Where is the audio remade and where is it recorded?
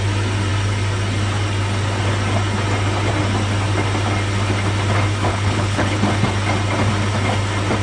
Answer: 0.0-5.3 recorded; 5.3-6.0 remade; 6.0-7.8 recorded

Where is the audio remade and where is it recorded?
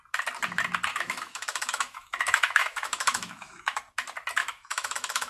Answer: 0.0-0.9 recorded; 0.9-3.8 remade; 3.8-4.4 recorded; 4.4-5.3 remade